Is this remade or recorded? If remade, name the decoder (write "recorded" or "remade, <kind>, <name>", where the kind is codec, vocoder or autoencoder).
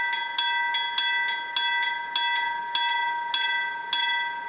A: recorded